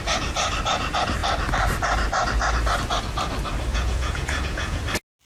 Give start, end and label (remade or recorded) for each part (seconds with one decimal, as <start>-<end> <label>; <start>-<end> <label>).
0.0-3.7 recorded; 3.7-4.8 remade; 4.8-5.3 recorded